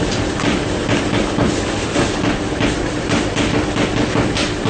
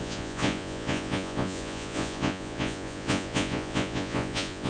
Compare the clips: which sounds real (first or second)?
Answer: first